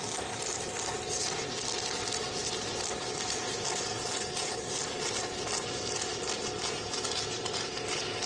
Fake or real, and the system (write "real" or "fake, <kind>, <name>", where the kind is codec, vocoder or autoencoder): real